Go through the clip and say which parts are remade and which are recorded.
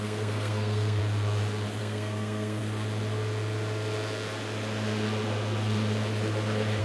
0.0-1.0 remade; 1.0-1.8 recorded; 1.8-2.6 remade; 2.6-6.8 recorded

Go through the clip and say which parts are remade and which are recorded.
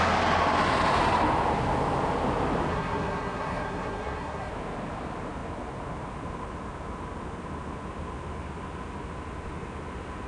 0.0-2.7 recorded; 2.7-4.5 remade; 4.5-10.3 recorded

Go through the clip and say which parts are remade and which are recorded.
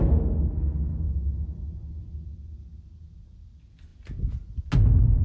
0.0-5.2 recorded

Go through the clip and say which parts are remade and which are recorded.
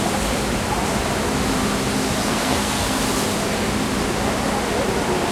0.0-2.2 recorded; 2.2-3.0 remade; 3.0-5.3 recorded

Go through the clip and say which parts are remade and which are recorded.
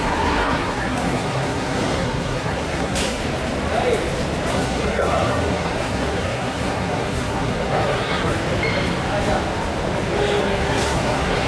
0.0-3.2 remade; 3.2-4.5 recorded; 4.5-8.3 remade; 8.3-10.4 recorded; 10.4-11.5 remade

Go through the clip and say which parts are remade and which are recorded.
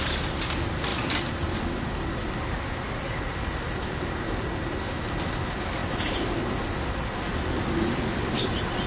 0.0-8.9 recorded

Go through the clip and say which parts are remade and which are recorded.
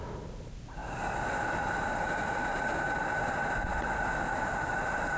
0.0-5.2 recorded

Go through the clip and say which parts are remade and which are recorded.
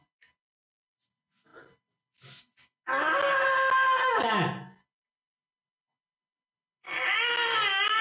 0.0-8.0 recorded